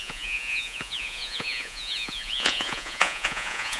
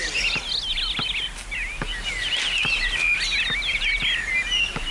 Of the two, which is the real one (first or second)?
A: second